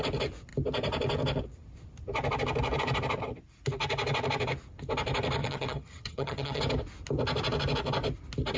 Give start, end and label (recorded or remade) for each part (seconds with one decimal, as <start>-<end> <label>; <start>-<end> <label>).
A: 0.0-5.4 recorded; 5.4-6.6 remade; 6.6-8.6 recorded